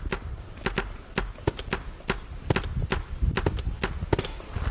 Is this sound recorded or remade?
recorded